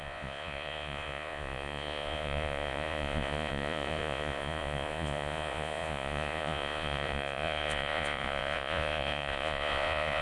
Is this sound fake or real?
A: fake